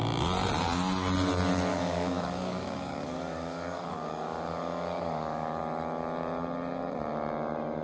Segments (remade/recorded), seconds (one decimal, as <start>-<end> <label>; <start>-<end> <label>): 0.0-1.7 recorded; 1.7-5.6 remade; 5.6-7.8 recorded